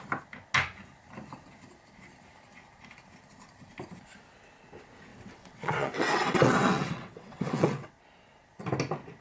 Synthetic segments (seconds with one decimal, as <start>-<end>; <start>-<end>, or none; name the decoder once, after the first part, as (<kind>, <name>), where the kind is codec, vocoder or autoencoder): 5.1-7.9 (vocoder, WaveNeXt)